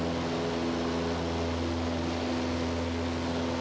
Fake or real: real